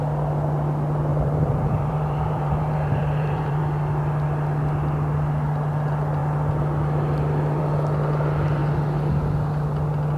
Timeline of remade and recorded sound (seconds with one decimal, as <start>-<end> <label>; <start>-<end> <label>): 0.0-1.1 recorded; 1.1-3.6 remade; 3.6-10.2 recorded